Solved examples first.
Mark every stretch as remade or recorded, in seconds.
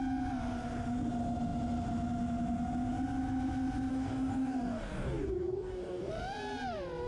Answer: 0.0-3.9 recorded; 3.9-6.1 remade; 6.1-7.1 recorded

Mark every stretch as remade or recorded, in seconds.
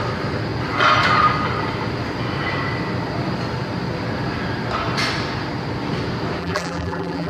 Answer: 0.0-6.4 recorded; 6.4-7.3 remade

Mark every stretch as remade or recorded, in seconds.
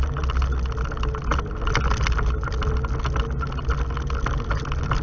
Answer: 0.0-5.0 recorded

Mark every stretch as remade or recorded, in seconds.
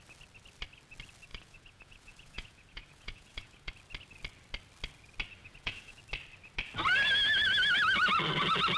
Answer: 0.0-1.3 recorded; 1.3-3.7 remade; 3.7-5.4 recorded; 5.4-6.0 remade; 6.0-8.8 recorded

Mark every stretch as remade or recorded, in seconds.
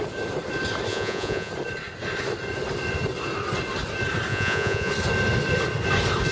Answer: 0.0-0.9 recorded; 0.9-1.5 remade; 1.5-4.3 recorded; 4.3-4.9 remade; 4.9-6.3 recorded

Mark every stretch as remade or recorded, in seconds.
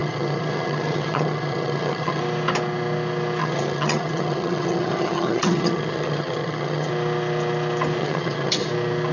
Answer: 0.0-2.2 remade; 2.2-3.4 recorded; 3.4-6.9 remade; 6.9-8.0 recorded; 8.0-8.7 remade; 8.7-9.1 recorded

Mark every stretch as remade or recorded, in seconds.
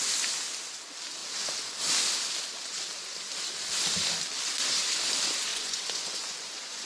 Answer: 0.0-5.5 recorded; 5.5-6.9 remade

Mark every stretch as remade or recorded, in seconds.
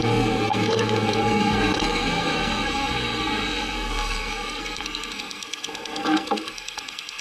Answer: 0.0-7.2 remade